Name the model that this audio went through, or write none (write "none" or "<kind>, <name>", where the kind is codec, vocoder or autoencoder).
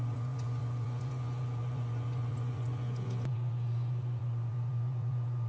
vocoder, Vocos